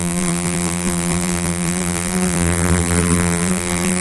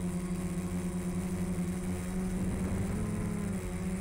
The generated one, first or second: first